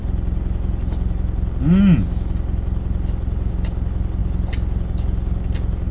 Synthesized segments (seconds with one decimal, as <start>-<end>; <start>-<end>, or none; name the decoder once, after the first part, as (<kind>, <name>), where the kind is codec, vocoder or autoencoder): none

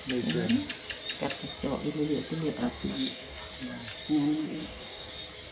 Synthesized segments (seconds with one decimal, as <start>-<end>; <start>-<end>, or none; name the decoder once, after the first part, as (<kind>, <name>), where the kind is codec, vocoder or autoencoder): 2.6-3.4 (codec, DAC); 4.4-5.1

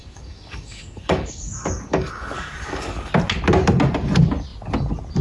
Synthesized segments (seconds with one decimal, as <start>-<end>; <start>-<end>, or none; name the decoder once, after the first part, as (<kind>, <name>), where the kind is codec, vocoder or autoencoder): 0.0-3.1 (codec, DAC)

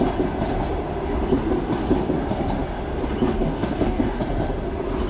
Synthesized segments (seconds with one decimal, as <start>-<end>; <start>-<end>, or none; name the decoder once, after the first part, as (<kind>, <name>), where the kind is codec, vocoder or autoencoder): 3.4-4.2 (codec, DAC)

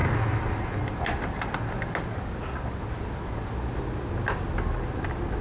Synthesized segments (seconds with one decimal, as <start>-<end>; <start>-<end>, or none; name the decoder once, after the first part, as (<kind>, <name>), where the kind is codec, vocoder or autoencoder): none